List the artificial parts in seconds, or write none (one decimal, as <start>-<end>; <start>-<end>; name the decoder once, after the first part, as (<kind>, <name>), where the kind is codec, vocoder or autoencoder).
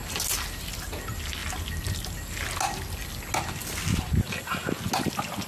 none